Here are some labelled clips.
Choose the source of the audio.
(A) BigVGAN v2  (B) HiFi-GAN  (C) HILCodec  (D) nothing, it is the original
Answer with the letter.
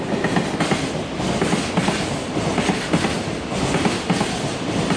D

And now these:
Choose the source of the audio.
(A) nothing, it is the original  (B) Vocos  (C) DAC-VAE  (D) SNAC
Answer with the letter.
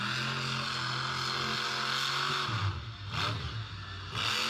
A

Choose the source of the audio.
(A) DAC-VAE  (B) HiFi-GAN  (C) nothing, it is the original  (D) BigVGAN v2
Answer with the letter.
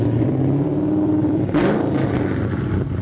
D